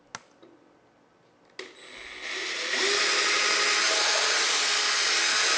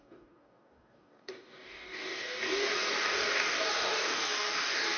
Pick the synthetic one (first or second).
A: second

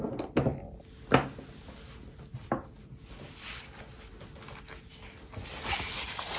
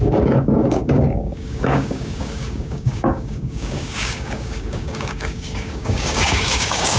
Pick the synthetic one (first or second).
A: second